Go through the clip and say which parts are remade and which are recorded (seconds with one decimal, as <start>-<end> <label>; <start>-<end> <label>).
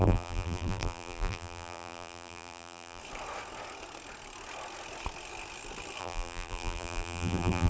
0.0-3.0 remade; 3.0-6.0 recorded; 6.0-7.7 remade